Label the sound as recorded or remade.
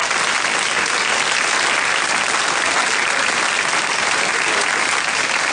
recorded